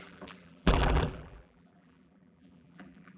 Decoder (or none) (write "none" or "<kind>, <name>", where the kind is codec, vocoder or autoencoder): vocoder, BigVGAN v2